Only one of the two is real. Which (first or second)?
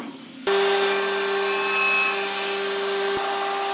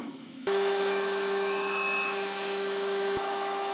first